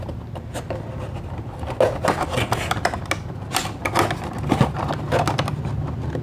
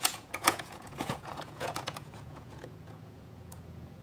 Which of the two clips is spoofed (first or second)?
second